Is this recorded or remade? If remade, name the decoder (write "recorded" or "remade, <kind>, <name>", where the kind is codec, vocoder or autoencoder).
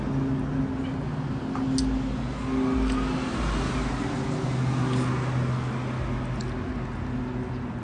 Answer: recorded